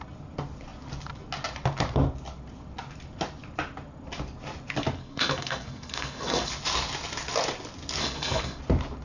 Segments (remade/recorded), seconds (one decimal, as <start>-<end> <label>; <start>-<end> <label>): 0.0-5.0 recorded; 5.0-6.5 remade; 6.5-8.0 recorded; 8.0-8.6 remade; 8.6-9.0 recorded